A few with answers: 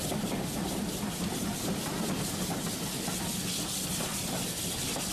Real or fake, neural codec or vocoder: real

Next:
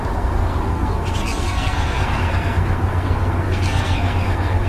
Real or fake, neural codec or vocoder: fake, codec, SNAC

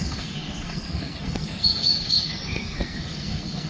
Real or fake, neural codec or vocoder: fake, codec, SNAC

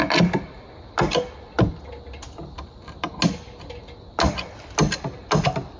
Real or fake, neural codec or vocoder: real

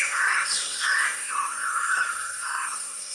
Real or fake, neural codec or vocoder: fake, codec, SNAC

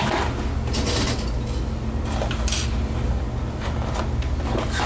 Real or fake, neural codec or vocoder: real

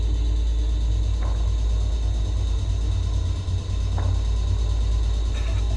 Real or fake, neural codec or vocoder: real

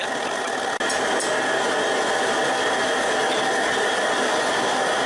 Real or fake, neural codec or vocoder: real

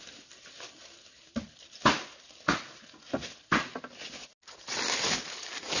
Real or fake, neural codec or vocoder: real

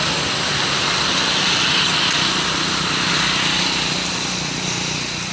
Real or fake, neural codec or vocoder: real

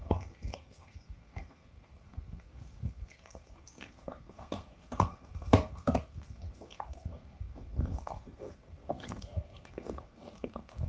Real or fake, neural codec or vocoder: fake, codec, SNAC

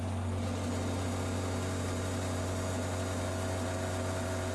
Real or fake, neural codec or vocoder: real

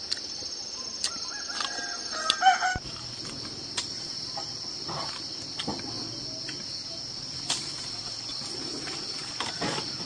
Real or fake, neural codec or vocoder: real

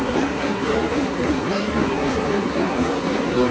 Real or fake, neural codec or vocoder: fake, codec, SNAC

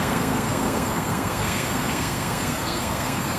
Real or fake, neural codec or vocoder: fake, codec, SNAC